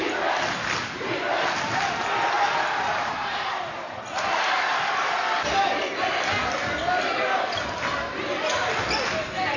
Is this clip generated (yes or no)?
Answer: no